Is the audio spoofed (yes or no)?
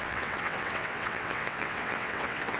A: yes